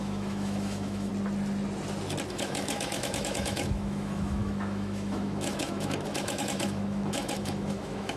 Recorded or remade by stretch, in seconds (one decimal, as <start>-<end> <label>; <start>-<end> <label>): 0.0-1.1 remade; 1.1-2.3 recorded; 2.3-8.2 remade